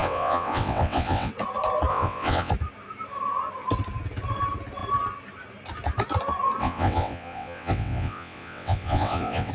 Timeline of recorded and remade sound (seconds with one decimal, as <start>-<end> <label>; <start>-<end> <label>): 0.0-1.3 remade; 1.3-1.9 recorded; 1.9-2.5 remade; 2.5-6.6 recorded; 6.6-9.5 remade